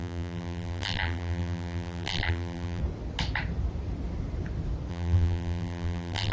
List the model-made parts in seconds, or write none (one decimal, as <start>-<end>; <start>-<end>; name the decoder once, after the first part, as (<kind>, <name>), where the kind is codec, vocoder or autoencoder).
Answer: 0.0-2.8 (vocoder, BigVGAN v2); 4.9-6.3